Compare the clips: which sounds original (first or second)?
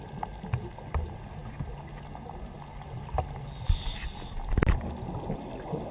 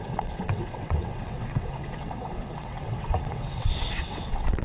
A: first